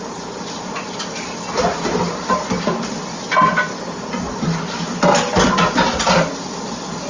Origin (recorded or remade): recorded